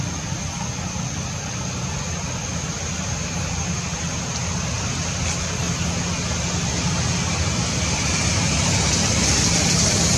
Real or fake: real